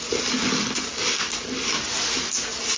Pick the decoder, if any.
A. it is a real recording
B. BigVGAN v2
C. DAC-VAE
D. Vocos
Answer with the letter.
A